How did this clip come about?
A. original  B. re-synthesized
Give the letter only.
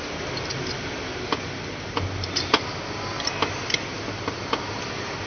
A